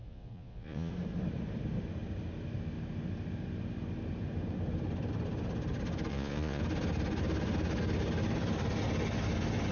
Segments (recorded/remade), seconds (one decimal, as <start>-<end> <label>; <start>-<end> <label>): 0.0-0.9 remade; 0.9-6.1 recorded; 6.1-6.6 remade; 6.6-9.7 recorded